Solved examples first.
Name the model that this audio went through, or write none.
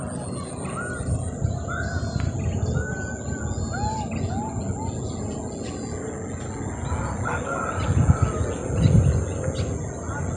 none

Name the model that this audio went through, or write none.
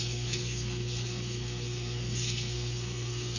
codec, SNAC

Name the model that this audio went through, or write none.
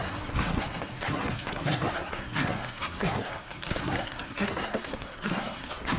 codec, SNAC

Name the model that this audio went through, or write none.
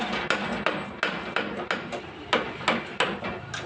none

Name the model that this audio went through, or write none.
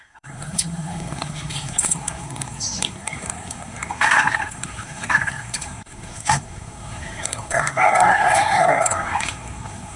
codec, SNAC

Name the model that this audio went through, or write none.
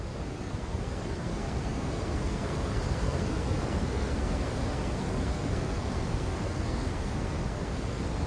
codec, SNAC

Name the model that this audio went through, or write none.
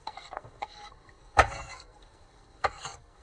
codec, SNAC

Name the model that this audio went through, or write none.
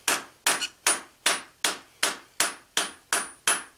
none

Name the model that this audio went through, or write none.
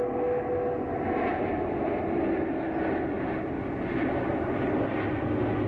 none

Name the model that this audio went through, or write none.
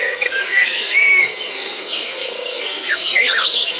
codec, SNAC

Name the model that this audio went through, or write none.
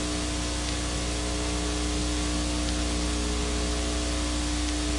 none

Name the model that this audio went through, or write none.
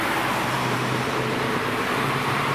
none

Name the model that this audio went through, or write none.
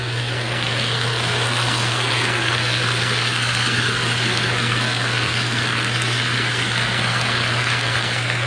codec, SNAC